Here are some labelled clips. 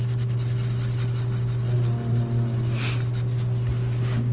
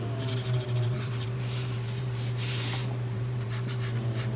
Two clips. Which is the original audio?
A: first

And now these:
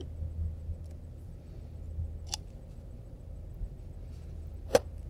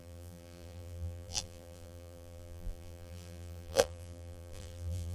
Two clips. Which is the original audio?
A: first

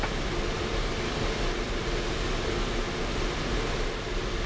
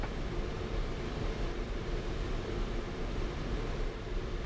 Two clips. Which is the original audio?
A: first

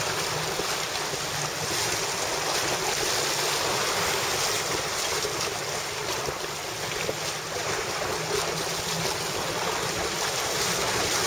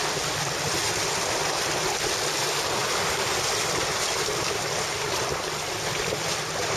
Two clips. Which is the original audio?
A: first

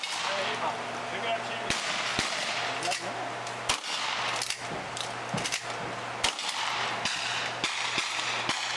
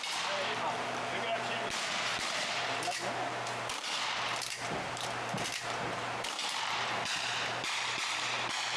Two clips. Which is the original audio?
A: first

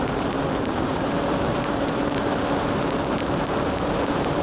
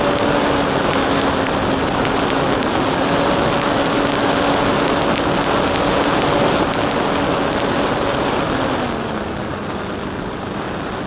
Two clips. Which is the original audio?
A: second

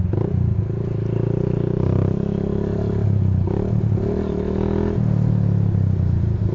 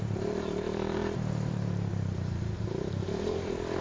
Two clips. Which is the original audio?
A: first